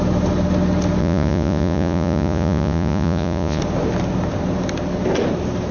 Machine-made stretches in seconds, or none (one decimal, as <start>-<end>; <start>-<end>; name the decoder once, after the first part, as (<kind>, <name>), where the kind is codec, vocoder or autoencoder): 1.0-3.6 (vocoder, Vocos)

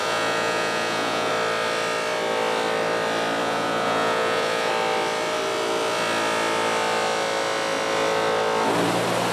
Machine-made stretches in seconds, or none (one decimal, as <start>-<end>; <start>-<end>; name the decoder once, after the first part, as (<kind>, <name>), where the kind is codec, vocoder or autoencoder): 0.0-1.3 (vocoder, Vocos); 3.4-4.7

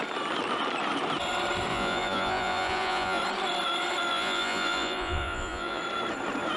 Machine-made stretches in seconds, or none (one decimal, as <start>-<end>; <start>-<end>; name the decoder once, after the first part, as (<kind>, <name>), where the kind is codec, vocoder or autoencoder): 1.7-3.2 (vocoder, Vocos); 4.1-5.8

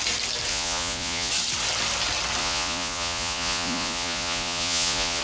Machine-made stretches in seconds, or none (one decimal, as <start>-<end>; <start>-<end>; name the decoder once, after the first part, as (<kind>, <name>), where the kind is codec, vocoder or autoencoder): 0.5-1.3 (vocoder, Vocos); 2.4-5.2

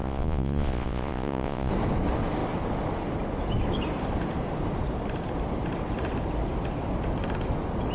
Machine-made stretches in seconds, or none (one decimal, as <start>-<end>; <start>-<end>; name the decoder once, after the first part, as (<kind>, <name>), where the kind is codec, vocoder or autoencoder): 0.0-1.7 (vocoder, Vocos)

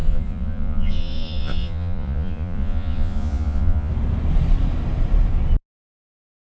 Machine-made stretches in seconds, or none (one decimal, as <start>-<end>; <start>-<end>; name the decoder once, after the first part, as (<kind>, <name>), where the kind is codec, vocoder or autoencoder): 0.0-3.9 (vocoder, Vocos)